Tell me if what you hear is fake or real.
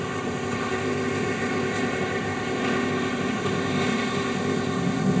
fake